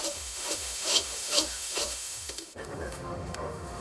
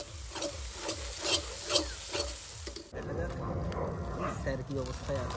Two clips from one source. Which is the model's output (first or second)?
first